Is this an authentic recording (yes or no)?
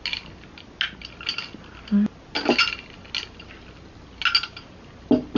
yes